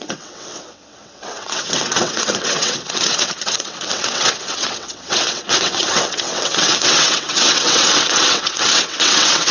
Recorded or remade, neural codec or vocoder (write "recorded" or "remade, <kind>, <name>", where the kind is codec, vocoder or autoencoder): remade, vocoder, WaveNeXt